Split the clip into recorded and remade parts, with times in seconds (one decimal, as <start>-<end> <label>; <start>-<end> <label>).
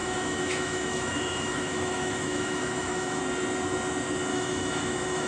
0.0-3.2 remade; 3.2-4.3 recorded; 4.3-5.3 remade